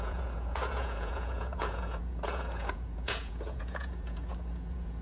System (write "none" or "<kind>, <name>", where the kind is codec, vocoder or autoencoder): vocoder, Vocos